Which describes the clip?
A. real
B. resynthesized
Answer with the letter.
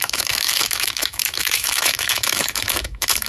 B